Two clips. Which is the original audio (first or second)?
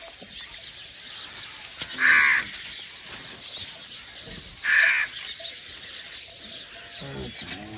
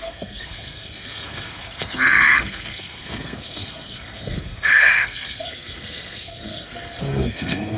first